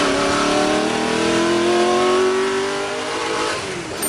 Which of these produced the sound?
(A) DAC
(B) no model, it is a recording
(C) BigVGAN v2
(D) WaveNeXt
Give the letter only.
B